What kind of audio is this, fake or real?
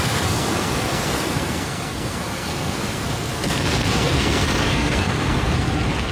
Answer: fake